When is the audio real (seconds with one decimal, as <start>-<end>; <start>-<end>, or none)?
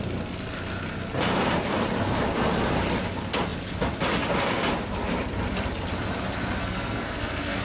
0.0-6.6